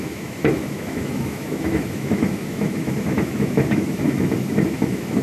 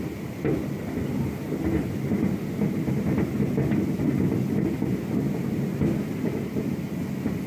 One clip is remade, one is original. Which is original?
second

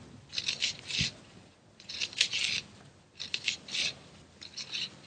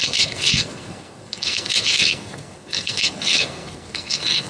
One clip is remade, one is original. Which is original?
first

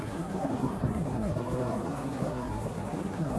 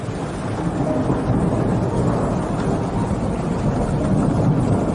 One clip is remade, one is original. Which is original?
second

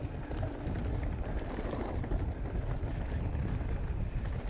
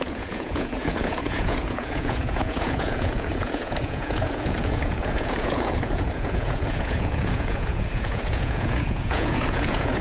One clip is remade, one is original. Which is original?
first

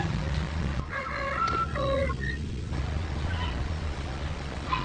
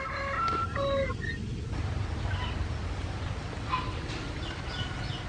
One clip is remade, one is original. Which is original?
second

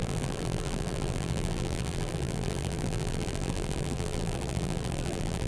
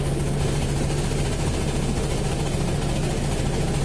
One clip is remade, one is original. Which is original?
second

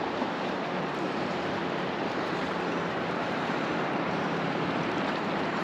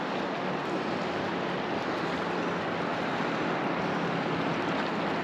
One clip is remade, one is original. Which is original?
second